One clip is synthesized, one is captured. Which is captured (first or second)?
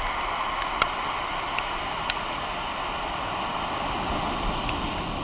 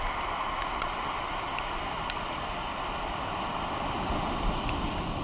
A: first